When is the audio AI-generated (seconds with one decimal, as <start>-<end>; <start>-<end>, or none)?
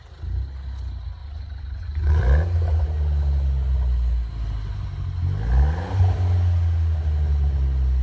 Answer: 1.2-2.2